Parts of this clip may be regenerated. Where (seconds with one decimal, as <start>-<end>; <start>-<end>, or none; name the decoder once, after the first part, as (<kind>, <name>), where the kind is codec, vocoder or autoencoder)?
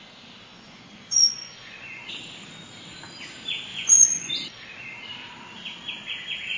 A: 0.5-2.1 (vocoder, Vocos); 3.7-4.3